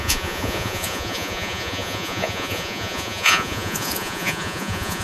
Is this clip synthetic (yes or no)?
yes